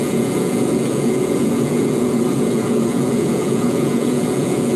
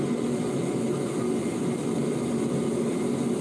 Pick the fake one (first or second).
first